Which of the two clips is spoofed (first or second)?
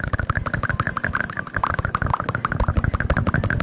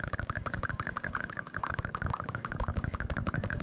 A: second